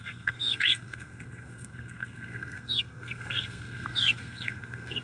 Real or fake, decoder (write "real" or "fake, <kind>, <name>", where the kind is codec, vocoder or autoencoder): fake, codec, SNAC